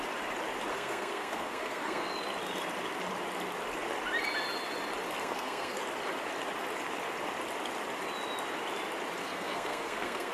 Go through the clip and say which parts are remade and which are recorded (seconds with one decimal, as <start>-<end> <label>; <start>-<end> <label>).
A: 0.0-0.7 recorded; 0.7-2.1 remade; 2.1-5.2 recorded; 5.2-5.8 remade; 5.8-9.2 recorded; 9.2-10.3 remade